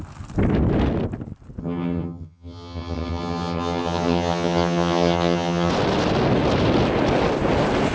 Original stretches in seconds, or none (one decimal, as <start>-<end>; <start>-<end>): 0.0-1.6; 5.7-7.9